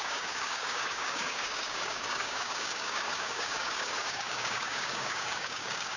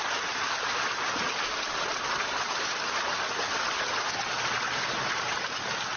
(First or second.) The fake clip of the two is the first